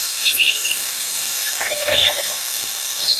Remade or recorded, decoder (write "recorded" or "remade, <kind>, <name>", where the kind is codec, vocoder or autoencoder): remade, codec, DAC